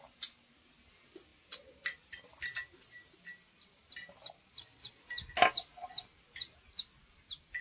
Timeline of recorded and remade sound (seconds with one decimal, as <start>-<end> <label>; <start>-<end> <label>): 0.0-7.6 recorded